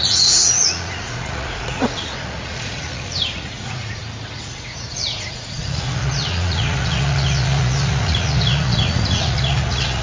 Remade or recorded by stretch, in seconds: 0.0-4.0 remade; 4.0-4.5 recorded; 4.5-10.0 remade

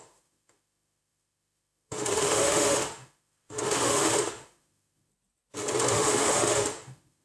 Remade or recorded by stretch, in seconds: 0.0-5.1 remade; 5.1-5.9 recorded; 5.9-7.2 remade